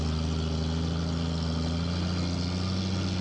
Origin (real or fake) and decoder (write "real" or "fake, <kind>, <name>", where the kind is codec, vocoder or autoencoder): real